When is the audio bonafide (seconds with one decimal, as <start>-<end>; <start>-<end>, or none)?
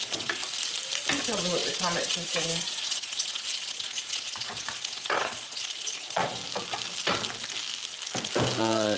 0.4-1.2; 6.4-8.6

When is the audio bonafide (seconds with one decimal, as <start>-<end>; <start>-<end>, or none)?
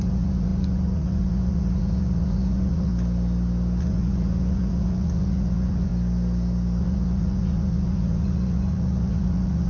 2.9-3.8; 5.9-6.8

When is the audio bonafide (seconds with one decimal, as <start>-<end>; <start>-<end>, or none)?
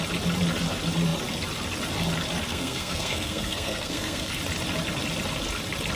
0.0-2.5; 4.4-6.0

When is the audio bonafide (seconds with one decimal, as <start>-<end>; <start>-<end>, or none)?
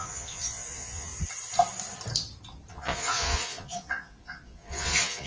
1.1-2.7